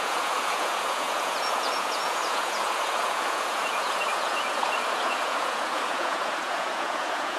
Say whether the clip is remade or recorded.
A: remade